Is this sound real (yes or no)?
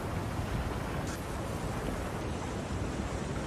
yes